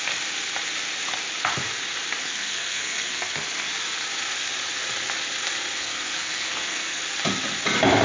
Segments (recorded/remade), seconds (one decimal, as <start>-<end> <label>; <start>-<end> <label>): 0.0-2.2 recorded; 2.2-3.7 remade; 3.7-5.8 recorded; 5.8-7.0 remade; 7.0-8.0 recorded